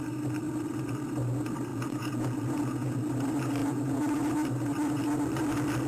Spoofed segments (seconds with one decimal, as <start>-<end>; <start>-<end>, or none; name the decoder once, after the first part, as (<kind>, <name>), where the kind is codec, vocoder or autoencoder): 1.7-3.0 (vocoder, Vocos); 3.6-4.2